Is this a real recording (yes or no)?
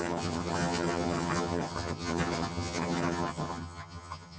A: no